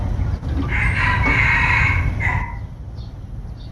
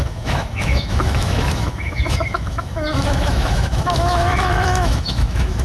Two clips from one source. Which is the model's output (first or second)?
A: second